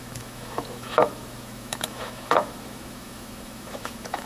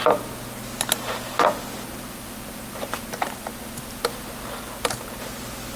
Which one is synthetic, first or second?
first